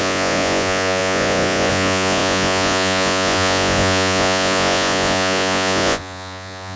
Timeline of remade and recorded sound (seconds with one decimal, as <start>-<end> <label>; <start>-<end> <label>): 0.0-6.8 remade